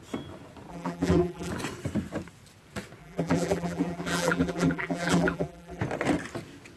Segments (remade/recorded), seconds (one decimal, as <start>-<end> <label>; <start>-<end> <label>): 0.0-0.7 recorded; 0.7-1.5 remade; 1.5-3.0 recorded; 3.0-5.8 remade; 5.8-6.8 recorded

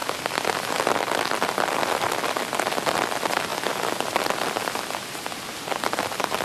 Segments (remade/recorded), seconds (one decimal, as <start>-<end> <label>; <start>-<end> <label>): 0.0-6.4 recorded

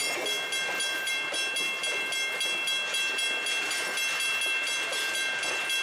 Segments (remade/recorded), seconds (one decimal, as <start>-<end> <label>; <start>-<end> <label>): 0.0-5.8 recorded